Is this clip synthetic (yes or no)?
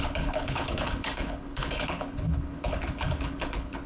yes